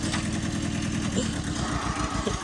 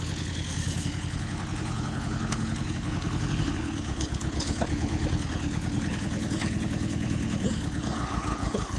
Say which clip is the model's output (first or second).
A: second